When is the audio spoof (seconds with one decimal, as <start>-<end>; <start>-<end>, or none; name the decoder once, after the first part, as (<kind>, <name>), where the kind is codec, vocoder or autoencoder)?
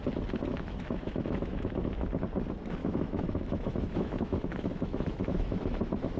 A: 0.5-1.8 (autoencoder, DAC-VAE); 2.8-5.8